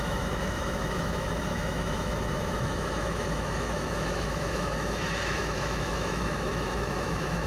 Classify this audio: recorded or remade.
remade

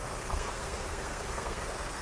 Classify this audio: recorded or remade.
remade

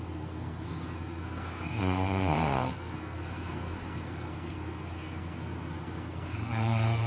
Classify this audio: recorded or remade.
remade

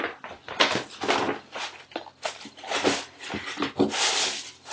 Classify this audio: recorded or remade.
recorded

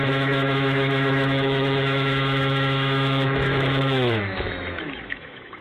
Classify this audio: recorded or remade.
remade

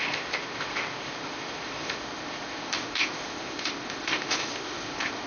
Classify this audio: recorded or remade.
remade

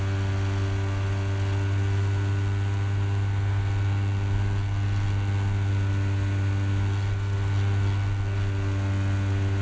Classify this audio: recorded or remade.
recorded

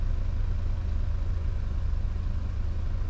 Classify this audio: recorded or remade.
remade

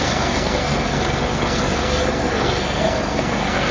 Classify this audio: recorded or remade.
remade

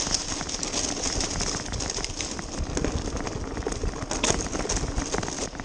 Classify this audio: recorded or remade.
recorded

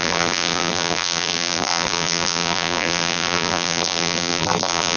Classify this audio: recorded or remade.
remade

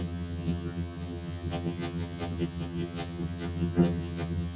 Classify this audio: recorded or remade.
remade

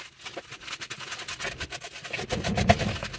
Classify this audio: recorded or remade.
recorded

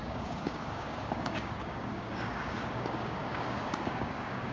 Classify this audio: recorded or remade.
remade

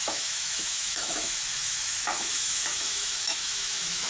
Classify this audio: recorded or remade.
remade